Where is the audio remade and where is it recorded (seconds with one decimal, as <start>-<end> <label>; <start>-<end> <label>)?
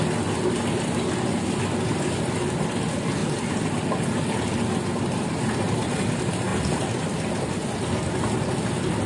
0.0-9.1 recorded